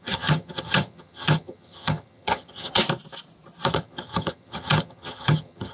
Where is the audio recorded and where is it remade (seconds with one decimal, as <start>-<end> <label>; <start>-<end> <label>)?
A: 0.0-2.8 remade; 2.8-3.7 recorded; 3.7-5.7 remade